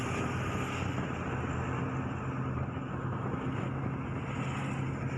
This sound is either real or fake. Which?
real